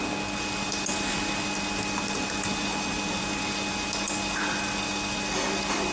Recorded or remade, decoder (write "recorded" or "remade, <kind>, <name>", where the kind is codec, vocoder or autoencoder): recorded